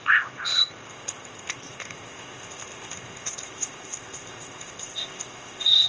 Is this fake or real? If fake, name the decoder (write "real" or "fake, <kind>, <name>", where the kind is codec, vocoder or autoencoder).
fake, codec, ZipCodec